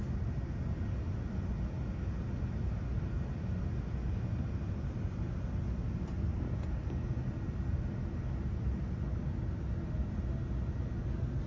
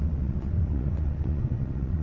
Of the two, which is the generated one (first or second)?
second